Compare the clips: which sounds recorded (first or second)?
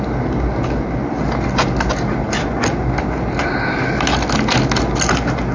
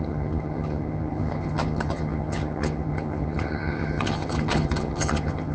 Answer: first